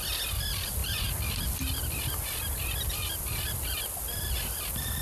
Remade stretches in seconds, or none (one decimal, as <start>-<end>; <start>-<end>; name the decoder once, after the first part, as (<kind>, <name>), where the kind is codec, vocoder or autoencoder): none